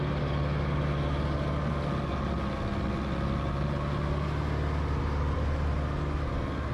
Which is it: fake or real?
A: real